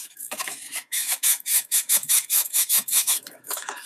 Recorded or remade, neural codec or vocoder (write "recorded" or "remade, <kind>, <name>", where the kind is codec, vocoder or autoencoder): remade, autoencoder, DAC-VAE